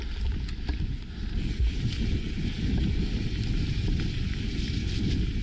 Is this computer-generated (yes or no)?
no